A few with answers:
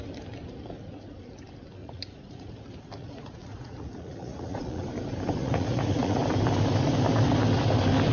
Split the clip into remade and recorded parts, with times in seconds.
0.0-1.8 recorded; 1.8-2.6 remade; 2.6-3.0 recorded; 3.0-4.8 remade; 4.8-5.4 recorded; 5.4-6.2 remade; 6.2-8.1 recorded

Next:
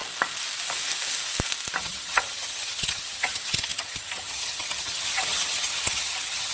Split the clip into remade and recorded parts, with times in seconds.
0.0-1.8 recorded; 1.8-6.5 remade

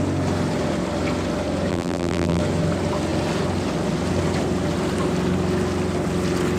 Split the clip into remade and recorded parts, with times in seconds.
0.0-1.7 recorded; 1.7-2.4 remade; 2.4-6.6 recorded